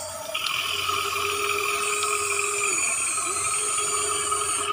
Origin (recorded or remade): recorded